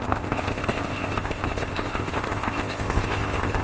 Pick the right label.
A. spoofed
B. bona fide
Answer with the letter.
A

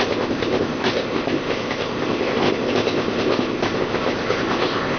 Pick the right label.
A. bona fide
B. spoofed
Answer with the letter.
B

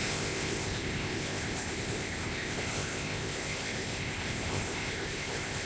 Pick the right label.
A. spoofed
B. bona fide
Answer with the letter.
A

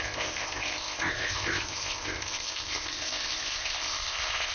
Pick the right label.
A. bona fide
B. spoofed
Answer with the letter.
B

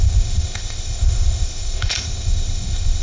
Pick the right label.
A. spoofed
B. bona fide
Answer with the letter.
A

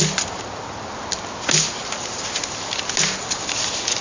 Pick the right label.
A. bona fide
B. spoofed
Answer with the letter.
A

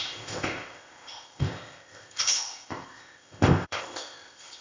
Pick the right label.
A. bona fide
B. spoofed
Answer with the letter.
B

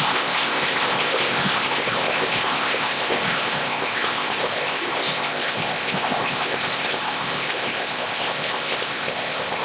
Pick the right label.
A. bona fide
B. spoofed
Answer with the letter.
B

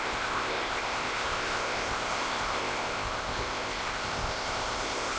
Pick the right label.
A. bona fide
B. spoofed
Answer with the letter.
B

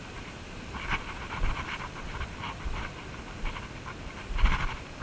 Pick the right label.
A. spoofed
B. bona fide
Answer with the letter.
B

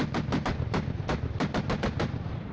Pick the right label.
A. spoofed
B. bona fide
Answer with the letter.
B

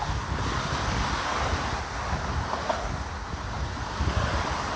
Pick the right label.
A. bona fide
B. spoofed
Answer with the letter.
A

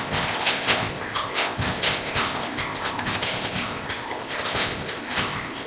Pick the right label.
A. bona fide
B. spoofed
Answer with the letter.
B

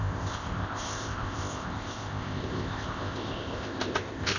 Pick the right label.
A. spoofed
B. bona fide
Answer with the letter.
A